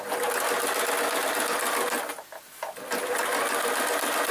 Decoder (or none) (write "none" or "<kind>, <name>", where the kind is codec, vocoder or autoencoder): none